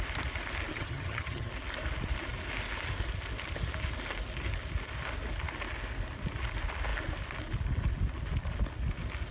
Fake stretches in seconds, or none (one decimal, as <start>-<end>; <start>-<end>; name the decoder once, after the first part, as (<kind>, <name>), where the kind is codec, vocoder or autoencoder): 0.7-1.5 (vocoder, HiFi-GAN)